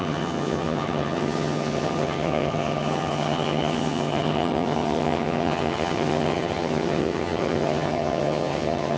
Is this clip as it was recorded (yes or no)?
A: no